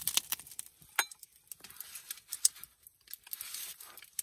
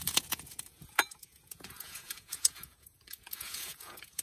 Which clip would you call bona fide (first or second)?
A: first